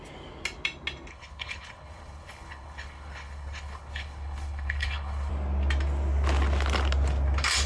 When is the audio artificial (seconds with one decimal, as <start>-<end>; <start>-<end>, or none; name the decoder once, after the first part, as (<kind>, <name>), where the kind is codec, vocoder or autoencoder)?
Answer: 1.1-5.3 (codec, HILCodec)